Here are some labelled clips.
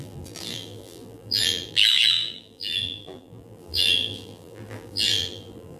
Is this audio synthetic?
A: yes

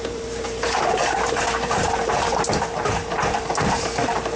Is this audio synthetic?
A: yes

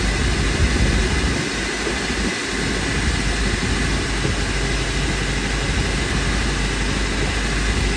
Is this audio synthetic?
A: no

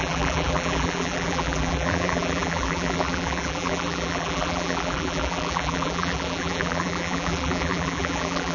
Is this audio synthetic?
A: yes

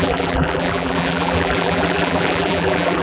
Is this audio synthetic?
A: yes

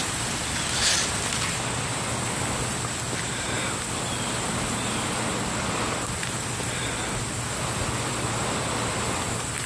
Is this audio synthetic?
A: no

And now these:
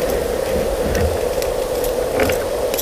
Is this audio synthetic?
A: no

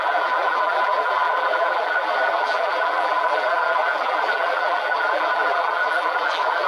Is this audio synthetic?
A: yes